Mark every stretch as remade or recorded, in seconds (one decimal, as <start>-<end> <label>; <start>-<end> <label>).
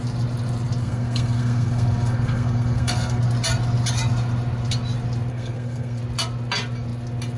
0.0-0.8 recorded; 0.8-3.2 remade; 3.2-5.3 recorded; 5.3-6.0 remade; 6.0-7.4 recorded